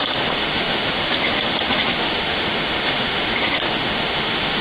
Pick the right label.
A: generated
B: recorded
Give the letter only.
A